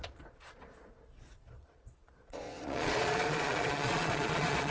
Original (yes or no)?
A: no